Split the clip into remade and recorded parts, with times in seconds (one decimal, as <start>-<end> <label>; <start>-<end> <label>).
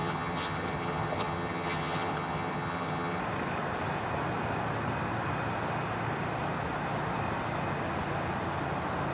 0.0-3.2 remade; 3.2-9.1 recorded